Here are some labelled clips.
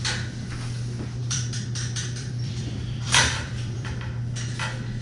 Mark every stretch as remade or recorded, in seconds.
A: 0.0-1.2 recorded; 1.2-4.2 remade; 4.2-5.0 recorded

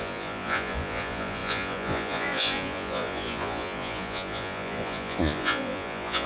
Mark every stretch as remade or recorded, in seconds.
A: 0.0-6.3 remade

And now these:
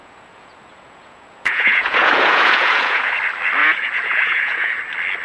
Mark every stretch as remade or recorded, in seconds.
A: 0.0-3.1 remade; 3.1-3.6 recorded; 3.6-4.8 remade; 4.8-5.2 recorded

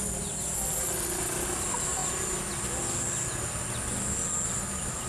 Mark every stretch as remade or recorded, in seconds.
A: 0.0-5.1 recorded